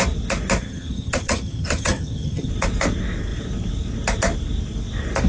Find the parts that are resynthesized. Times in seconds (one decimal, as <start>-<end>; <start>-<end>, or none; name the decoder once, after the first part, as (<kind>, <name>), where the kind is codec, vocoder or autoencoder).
0.6-2.5 (vocoder, HiFi-GAN)